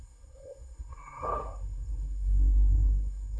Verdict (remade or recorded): remade